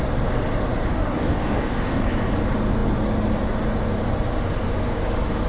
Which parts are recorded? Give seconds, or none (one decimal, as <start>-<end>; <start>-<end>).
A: 0.0-0.9; 2.1-5.5